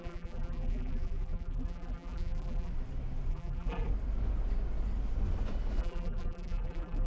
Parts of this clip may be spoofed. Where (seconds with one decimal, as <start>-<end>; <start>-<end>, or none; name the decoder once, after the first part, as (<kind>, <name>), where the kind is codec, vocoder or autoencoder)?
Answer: 0.0-2.7 (vocoder, BigVGAN v2); 3.3-3.9; 5.8-7.1

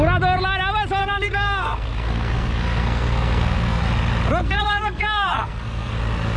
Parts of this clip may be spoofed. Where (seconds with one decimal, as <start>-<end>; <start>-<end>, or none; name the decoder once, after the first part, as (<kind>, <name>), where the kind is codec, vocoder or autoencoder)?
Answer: 1.0-3.8 (codec, SNAC); 4.4-6.0

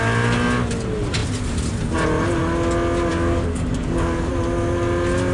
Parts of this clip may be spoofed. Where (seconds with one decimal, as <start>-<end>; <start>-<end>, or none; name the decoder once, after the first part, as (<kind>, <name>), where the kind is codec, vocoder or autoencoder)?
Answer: 3.1-4.3 (codec, DAC)

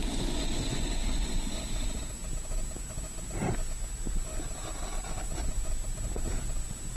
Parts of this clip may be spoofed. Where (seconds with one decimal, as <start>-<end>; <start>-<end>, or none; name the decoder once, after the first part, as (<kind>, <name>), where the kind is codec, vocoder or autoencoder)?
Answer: 0.0-1.3 (vocoder, Vocos)

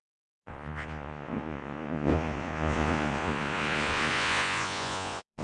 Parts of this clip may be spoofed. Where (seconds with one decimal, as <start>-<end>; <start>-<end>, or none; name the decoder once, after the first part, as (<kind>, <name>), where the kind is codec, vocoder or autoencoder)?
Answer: 0.0-5.4 (vocoder, Vocos)

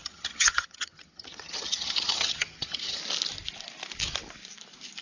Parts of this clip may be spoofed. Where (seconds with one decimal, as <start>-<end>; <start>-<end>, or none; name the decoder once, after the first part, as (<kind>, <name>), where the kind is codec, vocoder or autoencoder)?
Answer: 0.0-3.0 (vocoder, HiFi-GAN)

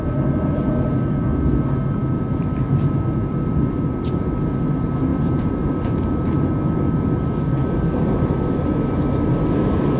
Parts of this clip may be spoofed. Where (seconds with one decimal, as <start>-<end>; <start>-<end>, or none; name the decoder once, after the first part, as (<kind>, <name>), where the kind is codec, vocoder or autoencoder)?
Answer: none

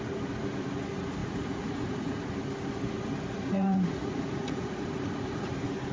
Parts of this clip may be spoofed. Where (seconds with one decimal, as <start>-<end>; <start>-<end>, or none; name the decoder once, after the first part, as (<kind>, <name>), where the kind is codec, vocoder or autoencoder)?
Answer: 1.2-2.3 (vocoder, Vocos); 3.5-5.5